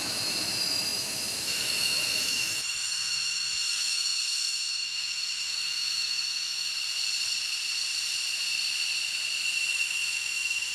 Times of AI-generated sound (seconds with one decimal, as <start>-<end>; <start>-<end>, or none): 0.0-6.7; 9.7-10.7